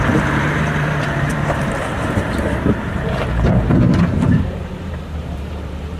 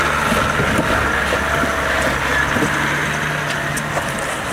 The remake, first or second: first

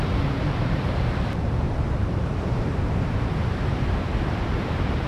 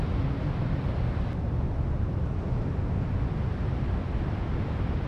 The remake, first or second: first